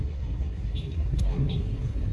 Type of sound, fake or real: fake